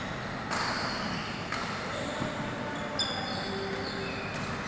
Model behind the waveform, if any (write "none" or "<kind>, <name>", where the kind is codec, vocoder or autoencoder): none